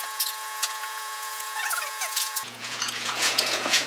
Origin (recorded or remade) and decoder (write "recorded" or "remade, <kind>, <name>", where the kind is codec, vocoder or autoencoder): remade, vocoder, Vocos